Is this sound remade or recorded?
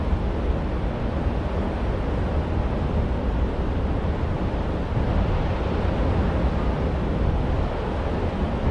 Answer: recorded